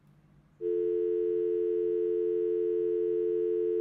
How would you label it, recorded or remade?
recorded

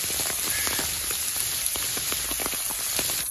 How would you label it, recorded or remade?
recorded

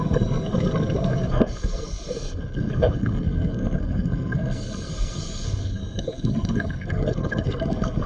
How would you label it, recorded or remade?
remade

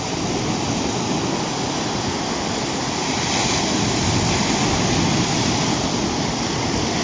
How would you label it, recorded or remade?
recorded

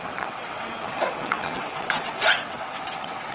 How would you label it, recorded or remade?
remade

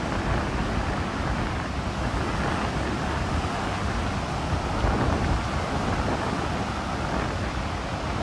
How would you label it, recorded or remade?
recorded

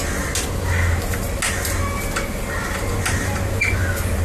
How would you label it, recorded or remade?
recorded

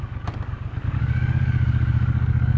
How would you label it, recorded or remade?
remade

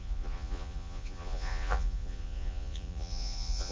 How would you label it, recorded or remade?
remade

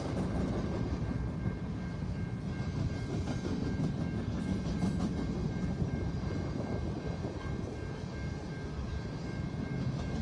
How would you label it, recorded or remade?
recorded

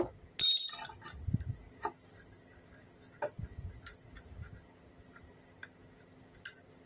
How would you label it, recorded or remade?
recorded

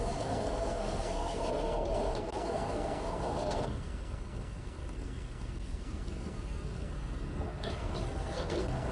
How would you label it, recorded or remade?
remade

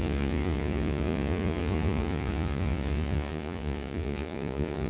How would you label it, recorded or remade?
remade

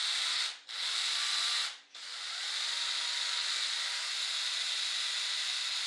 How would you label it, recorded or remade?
recorded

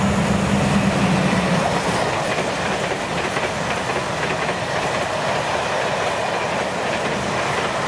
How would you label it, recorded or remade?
recorded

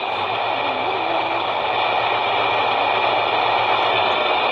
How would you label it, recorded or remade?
recorded